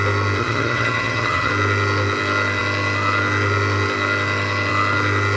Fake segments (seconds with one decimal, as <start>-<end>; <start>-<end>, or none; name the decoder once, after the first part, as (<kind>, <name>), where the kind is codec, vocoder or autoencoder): 0.4-1.5 (vocoder, HiFi-GAN)